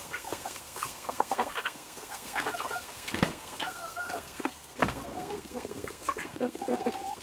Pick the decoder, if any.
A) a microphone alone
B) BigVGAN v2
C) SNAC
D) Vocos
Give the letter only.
C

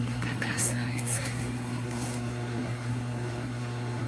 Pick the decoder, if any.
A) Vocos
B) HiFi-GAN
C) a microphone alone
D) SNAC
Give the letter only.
D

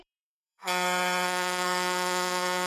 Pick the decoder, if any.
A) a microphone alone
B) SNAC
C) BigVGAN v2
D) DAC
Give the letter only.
B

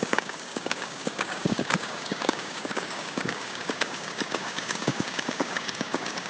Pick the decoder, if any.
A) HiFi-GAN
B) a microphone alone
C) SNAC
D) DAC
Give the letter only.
D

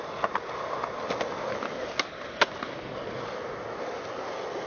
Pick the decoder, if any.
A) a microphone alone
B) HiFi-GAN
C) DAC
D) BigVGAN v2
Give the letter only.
A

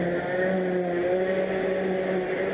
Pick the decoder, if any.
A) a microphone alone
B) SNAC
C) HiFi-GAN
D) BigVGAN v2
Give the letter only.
A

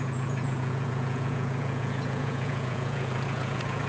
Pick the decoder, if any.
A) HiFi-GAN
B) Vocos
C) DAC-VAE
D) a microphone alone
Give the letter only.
B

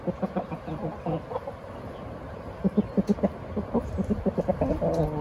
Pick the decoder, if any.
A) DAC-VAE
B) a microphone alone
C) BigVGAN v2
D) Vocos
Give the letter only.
B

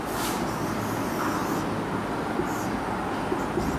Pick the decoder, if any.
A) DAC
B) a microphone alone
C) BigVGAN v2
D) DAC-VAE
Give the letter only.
B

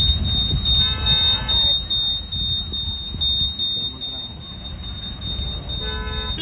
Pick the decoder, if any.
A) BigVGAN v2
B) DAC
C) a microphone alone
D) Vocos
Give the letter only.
C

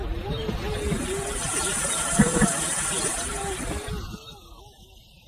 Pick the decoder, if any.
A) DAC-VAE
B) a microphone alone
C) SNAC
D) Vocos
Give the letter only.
B